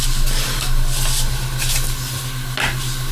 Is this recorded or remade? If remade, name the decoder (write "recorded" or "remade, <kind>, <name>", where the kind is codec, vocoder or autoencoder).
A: recorded